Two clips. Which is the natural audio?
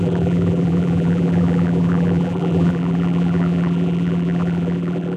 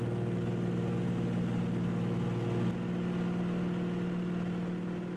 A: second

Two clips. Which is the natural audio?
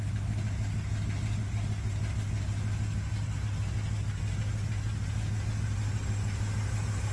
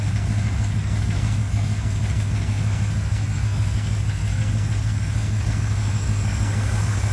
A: first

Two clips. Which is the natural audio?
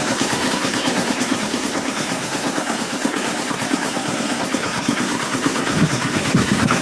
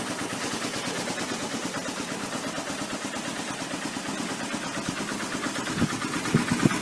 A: second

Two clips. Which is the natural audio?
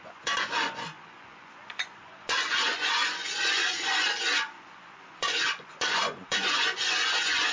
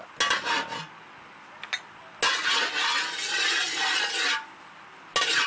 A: second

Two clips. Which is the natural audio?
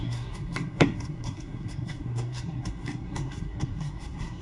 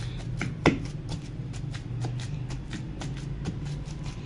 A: second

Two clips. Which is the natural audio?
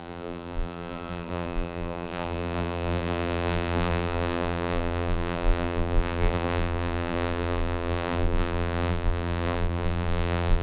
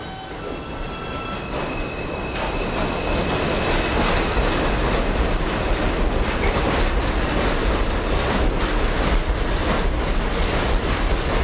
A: second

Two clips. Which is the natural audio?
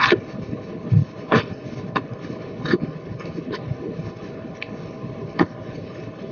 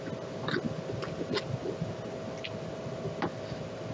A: second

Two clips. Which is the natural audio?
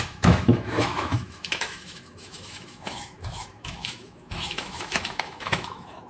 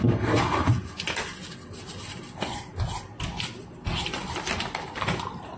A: second